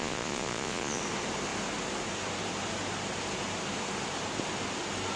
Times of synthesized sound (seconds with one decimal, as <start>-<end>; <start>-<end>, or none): 0.0-1.0